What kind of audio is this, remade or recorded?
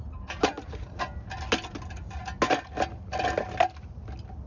recorded